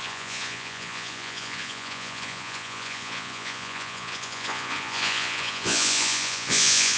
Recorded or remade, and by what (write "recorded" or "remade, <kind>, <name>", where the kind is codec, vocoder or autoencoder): remade, vocoder, Vocos